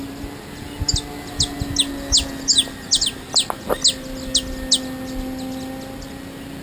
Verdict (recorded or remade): recorded